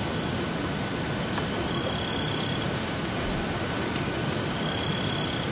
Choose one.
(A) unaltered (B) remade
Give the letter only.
A